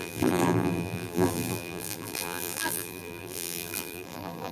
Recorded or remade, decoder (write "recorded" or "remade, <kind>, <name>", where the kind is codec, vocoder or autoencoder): remade, vocoder, BigVGAN v2